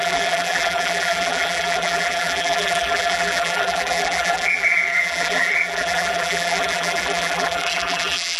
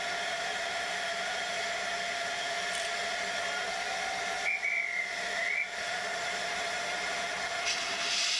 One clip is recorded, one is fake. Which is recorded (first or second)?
second